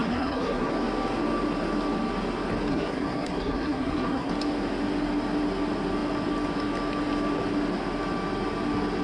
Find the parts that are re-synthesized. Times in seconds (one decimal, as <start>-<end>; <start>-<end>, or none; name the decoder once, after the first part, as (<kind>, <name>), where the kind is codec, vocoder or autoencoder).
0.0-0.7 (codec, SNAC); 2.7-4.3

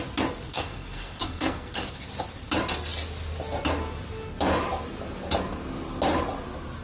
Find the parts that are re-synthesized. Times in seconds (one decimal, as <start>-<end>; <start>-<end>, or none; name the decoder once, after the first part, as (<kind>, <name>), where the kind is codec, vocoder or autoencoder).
0.5-2.0 (codec, SNAC)

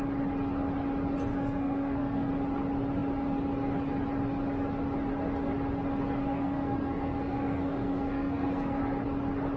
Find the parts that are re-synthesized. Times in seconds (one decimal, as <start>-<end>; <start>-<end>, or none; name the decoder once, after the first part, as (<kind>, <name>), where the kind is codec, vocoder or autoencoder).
1.3-2.3 (codec, SNAC); 6.2-8.8